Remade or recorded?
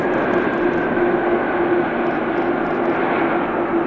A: recorded